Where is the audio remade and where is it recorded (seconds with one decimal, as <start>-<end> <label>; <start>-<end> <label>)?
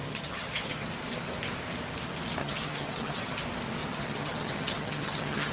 0.0-0.9 remade; 0.9-2.4 recorded; 2.4-3.4 remade; 3.4-3.8 recorded; 3.8-5.5 remade